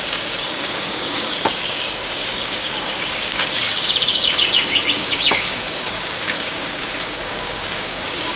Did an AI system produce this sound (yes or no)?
yes